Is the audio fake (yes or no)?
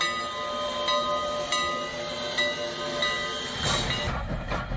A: no